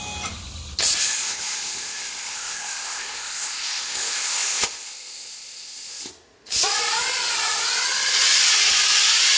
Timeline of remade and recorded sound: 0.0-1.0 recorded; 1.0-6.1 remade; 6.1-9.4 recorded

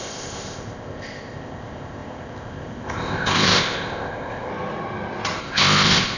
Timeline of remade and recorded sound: 0.0-4.5 remade; 4.5-5.4 recorded; 5.4-6.2 remade

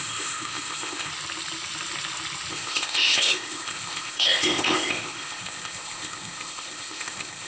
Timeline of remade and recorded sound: 0.0-1.1 remade; 1.1-2.5 recorded; 2.5-7.5 remade

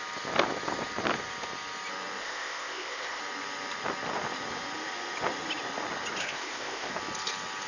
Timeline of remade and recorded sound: 0.0-2.2 recorded; 2.2-3.2 remade; 3.2-6.2 recorded; 6.2-6.9 remade; 6.9-7.7 recorded

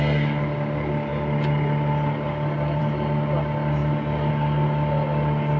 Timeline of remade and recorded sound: 0.0-5.6 recorded

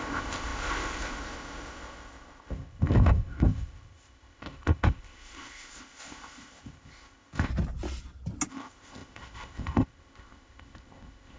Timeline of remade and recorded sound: 0.0-7.5 remade; 7.5-8.5 recorded; 8.5-11.4 remade

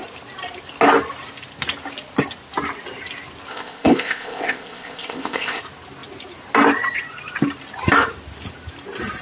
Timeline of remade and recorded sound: 0.0-3.5 recorded; 3.5-5.6 remade; 5.6-9.2 recorded

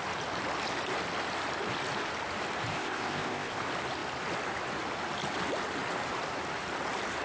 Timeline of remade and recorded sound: 0.0-2.7 recorded; 2.7-3.6 remade; 3.6-7.2 recorded